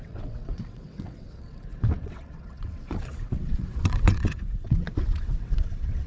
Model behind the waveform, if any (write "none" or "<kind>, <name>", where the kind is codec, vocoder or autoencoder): vocoder, WaveNeXt